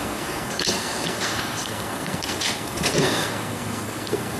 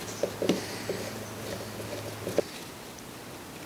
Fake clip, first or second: first